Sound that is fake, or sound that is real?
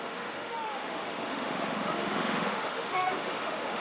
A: fake